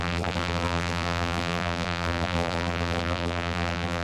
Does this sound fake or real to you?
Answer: fake